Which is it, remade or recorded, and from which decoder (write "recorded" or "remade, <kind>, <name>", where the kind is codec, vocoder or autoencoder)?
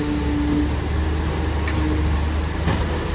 recorded